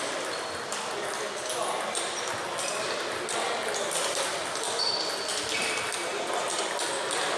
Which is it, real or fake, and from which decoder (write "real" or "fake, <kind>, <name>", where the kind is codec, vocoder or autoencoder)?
real